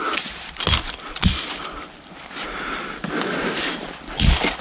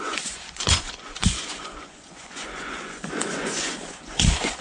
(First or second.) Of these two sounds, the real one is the first